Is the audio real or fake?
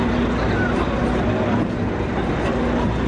real